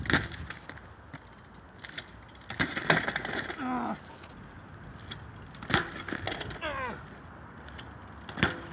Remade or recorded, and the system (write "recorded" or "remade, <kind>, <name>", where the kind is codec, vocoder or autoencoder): recorded